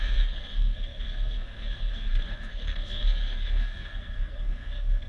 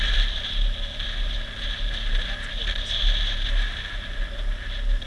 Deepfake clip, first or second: first